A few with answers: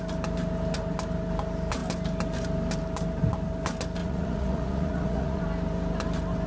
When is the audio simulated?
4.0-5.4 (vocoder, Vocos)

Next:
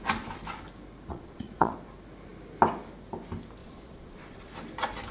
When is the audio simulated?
1.1-1.7 (vocoder, Vocos); 3.6-4.5

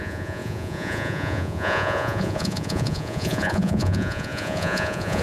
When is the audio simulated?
0.0-5.2 (vocoder, Vocos)